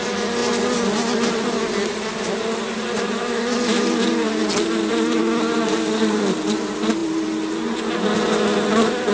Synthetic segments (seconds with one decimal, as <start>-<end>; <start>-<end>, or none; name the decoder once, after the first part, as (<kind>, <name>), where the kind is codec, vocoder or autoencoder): none